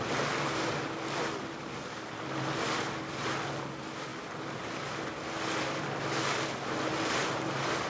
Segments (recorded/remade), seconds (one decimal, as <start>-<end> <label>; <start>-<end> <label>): 0.0-7.9 recorded